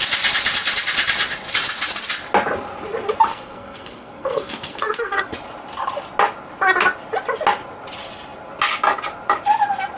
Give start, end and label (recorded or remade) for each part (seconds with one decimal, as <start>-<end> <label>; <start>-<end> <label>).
0.0-3.3 recorded; 3.3-5.2 remade; 5.2-10.0 recorded